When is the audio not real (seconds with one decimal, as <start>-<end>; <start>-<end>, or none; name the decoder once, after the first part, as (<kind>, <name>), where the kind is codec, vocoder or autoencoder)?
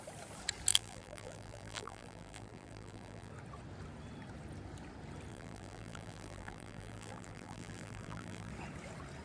0.7-3.3 (vocoder, BigVGAN v2); 5.3-8.5